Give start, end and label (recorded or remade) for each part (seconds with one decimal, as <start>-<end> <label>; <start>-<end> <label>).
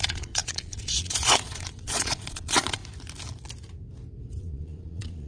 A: 0.0-2.8 remade; 2.8-4.4 recorded; 4.4-5.3 remade